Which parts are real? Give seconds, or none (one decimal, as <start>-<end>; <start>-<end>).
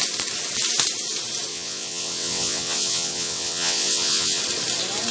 0.0-1.5; 4.4-5.1